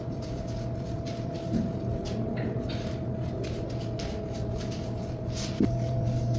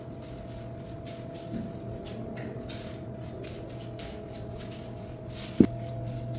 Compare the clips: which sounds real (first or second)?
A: second